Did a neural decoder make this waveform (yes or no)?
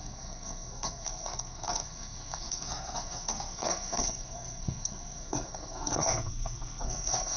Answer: yes